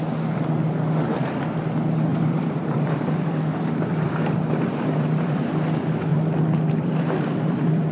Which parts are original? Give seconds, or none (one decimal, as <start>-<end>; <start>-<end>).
0.0-2.1; 5.4-6.1